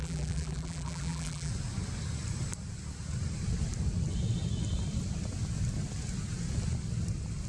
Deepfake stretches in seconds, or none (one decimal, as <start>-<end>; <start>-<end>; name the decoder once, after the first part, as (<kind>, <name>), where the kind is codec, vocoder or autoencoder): 0.0-1.5 (vocoder, BigVGAN v2)